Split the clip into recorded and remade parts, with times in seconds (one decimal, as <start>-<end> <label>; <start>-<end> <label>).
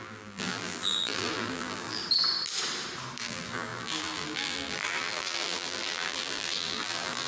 0.0-2.0 remade; 2.0-3.2 recorded; 3.2-7.3 remade